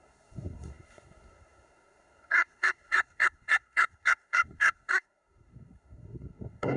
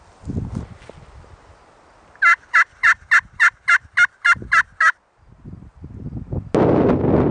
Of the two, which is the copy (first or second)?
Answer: first